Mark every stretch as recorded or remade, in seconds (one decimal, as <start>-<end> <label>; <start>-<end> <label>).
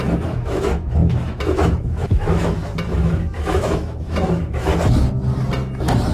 0.0-4.7 remade; 4.7-6.1 recorded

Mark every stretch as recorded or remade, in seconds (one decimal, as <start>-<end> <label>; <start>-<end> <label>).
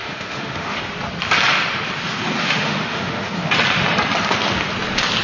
0.0-0.8 remade; 0.8-2.4 recorded; 2.4-3.4 remade; 3.4-5.2 recorded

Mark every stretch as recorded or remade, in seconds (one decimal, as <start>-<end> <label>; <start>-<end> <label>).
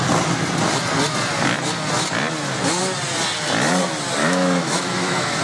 0.0-4.2 recorded; 4.2-5.4 remade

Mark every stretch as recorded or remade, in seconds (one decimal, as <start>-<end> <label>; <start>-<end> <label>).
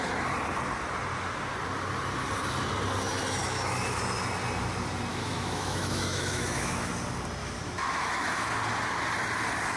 0.0-3.4 recorded; 3.4-4.0 remade; 4.0-5.1 recorded; 5.1-6.9 remade; 6.9-7.4 recorded; 7.4-8.5 remade; 8.5-9.8 recorded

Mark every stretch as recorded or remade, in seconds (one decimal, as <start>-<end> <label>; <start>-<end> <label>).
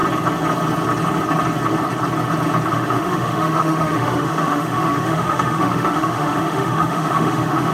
0.0-2.7 recorded; 2.7-7.7 remade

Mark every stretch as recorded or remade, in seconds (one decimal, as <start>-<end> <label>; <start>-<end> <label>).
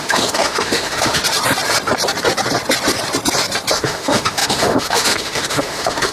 0.0-1.2 remade; 1.2-3.7 recorded; 3.7-6.1 remade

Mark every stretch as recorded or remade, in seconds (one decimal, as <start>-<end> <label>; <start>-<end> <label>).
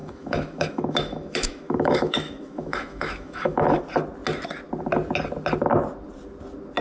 0.0-3.8 remade; 3.8-6.8 recorded